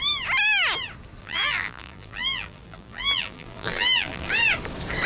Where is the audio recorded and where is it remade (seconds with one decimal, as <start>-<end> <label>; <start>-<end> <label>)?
0.0-1.2 recorded; 1.2-4.3 remade; 4.3-5.1 recorded